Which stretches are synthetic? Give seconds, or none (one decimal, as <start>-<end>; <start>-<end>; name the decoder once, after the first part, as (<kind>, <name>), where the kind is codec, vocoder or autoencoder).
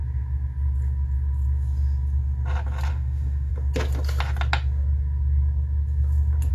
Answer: 2.9-3.5 (autoencoder, DAC-VAE)